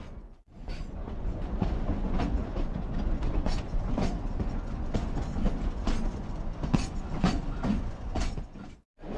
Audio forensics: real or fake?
fake